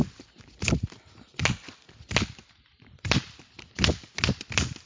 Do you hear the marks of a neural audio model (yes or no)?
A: no